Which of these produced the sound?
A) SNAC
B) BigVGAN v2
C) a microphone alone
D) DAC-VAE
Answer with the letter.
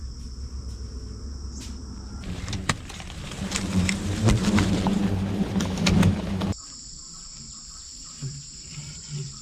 B